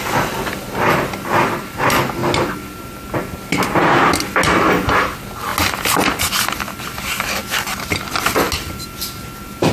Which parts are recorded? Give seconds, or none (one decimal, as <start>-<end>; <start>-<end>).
0.0-9.7